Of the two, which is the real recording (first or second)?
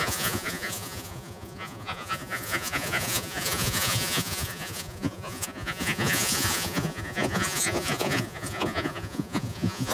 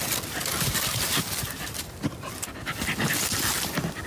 second